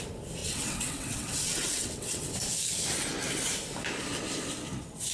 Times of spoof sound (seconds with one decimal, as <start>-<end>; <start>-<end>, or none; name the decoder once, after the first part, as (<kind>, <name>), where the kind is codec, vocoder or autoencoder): 0.4-2.3 (vocoder, WaveNeXt)